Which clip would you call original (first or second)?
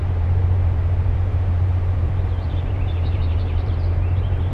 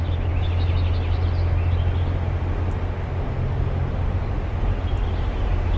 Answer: second